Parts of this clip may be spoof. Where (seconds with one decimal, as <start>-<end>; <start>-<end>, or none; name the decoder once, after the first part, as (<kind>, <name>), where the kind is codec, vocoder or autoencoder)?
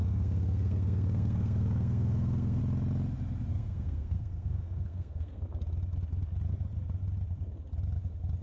0.0-2.6 (codec, SNAC); 3.5-5.4